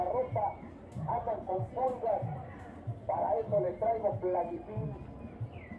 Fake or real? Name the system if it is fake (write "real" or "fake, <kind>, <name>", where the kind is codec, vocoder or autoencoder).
fake, vocoder, BigVGAN v2